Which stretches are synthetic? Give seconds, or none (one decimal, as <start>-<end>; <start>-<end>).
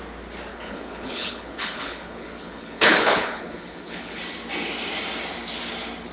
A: 0.5-4.2